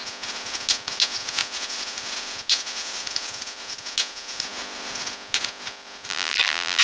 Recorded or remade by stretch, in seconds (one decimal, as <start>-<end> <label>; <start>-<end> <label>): 0.0-6.1 recorded; 6.1-6.8 remade